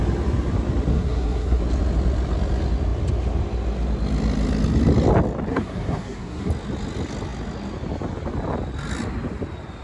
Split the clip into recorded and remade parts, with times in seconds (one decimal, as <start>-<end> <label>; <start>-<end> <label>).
0.0-0.9 recorded; 0.9-1.6 remade; 1.6-5.5 recorded; 5.5-6.5 remade; 6.5-9.8 recorded